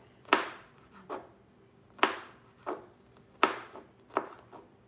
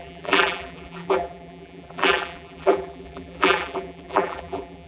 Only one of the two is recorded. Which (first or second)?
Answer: first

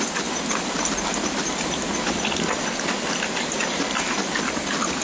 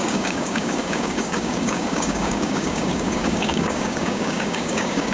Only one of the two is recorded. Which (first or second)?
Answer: first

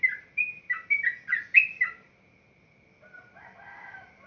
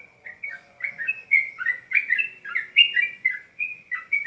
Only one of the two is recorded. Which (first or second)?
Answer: first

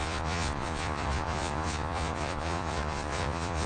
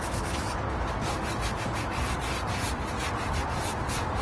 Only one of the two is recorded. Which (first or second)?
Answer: second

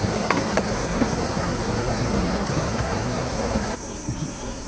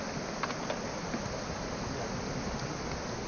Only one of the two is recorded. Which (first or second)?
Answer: second